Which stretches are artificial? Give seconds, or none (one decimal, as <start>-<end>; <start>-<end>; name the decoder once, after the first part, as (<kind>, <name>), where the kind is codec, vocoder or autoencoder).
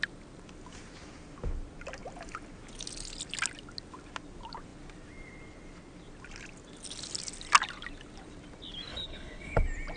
8.9-9.6 (codec, HILCodec)